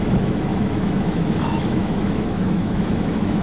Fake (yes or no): yes